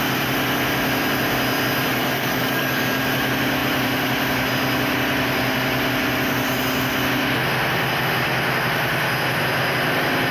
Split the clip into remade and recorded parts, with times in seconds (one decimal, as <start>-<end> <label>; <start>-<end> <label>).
0.0-2.0 recorded; 2.0-3.0 remade; 3.0-10.3 recorded

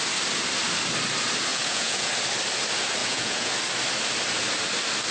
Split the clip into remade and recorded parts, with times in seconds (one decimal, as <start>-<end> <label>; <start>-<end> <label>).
0.0-1.5 recorded; 1.5-2.1 remade; 2.1-3.0 recorded; 3.0-3.5 remade; 3.5-5.1 recorded

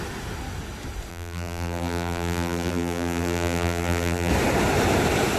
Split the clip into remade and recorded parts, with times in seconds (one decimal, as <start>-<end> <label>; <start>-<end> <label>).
0.0-1.1 recorded; 1.1-4.3 remade; 4.3-5.4 recorded

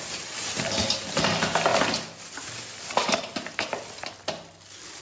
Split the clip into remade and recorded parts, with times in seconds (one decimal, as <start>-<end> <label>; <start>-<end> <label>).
0.0-5.0 recorded

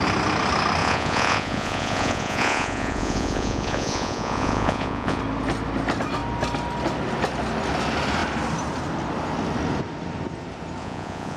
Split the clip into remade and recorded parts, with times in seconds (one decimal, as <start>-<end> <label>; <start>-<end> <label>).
0.0-0.8 recorded; 0.8-5.2 remade; 5.2-10.8 recorded; 10.8-11.4 remade

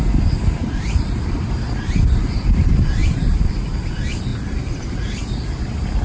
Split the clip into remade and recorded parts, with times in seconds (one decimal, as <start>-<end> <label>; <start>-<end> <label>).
0.0-0.6 recorded; 0.6-1.6 remade; 1.6-3.0 recorded; 3.0-3.5 remade; 3.5-4.3 recorded; 4.3-4.8 remade; 4.8-6.0 recorded

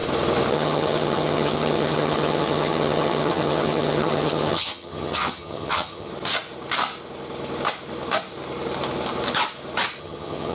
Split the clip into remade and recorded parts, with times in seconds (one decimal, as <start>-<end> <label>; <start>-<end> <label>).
0.0-0.5 recorded; 0.5-6.1 remade; 6.1-10.0 recorded; 10.0-10.5 remade

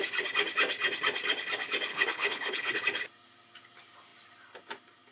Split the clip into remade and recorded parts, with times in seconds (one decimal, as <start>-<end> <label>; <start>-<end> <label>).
0.0-1.9 recorded; 1.9-2.8 remade; 2.8-5.1 recorded